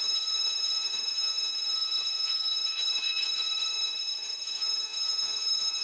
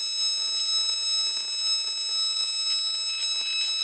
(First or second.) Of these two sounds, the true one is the second